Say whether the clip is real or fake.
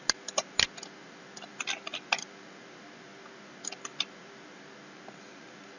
real